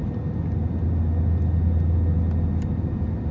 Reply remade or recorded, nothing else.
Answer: recorded